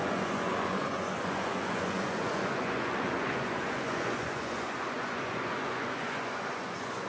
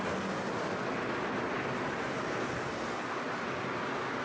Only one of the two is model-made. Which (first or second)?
first